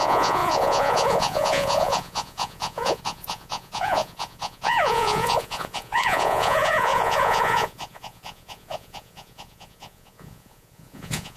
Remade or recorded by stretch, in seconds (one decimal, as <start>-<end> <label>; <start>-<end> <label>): 0.0-11.4 remade